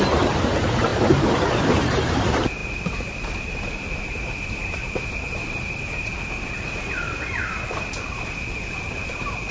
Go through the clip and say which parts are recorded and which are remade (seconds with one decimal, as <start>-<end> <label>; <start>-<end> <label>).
0.0-6.1 remade; 6.1-7.3 recorded; 7.3-9.5 remade